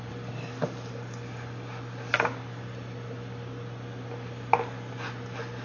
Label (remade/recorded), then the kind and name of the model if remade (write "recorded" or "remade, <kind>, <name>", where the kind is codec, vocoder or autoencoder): recorded